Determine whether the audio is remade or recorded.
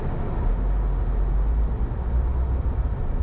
recorded